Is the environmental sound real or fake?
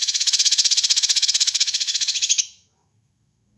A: fake